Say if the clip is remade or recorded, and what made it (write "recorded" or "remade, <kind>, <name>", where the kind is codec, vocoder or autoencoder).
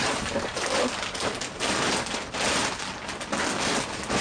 recorded